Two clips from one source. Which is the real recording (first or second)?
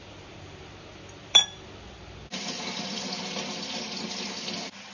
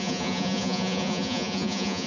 first